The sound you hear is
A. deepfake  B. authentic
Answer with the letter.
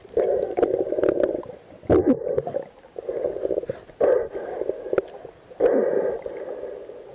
B